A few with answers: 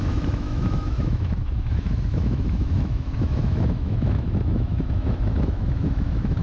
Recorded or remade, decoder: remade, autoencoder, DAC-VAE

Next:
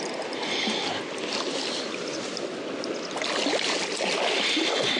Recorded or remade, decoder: recorded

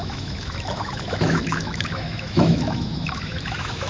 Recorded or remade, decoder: remade, autoencoder, DAC-VAE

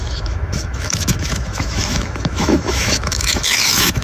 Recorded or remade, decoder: remade, autoencoder, DAC-VAE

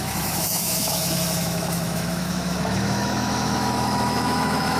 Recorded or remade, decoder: remade, autoencoder, DAC-VAE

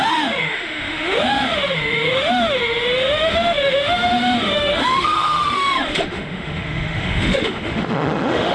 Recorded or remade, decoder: remade, autoencoder, DAC-VAE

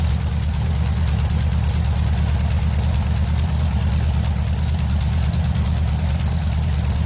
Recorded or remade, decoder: recorded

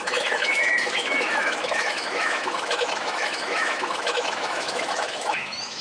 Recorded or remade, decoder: remade, autoencoder, DAC-VAE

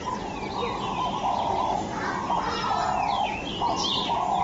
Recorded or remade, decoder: recorded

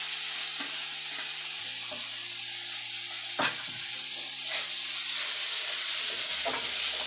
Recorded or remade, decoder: recorded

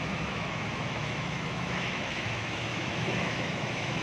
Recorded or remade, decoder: remade, autoencoder, DAC-VAE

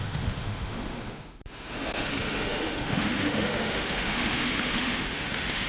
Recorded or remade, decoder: remade, autoencoder, DAC-VAE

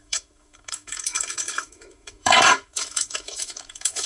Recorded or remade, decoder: remade, autoencoder, DAC-VAE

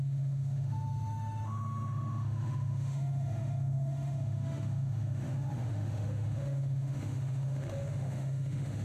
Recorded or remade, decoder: remade, autoencoder, DAC-VAE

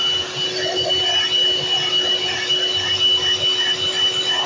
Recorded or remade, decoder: recorded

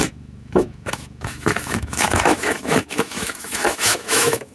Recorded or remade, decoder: remade, autoencoder, DAC-VAE